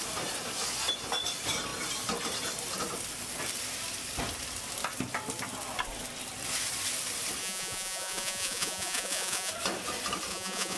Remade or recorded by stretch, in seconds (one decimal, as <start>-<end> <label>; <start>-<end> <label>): 0.0-7.4 recorded; 7.4-9.5 remade; 9.5-10.3 recorded; 10.3-10.8 remade